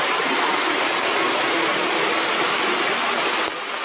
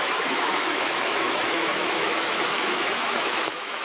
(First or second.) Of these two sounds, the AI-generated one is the second